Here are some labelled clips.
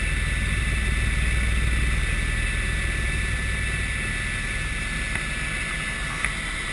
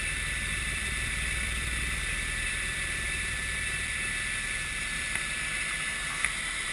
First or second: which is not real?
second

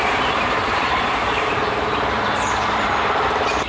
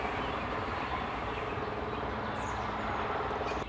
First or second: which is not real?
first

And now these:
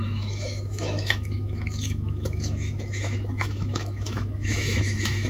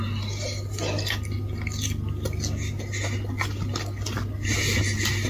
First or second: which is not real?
first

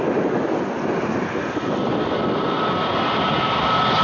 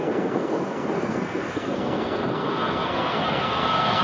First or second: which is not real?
second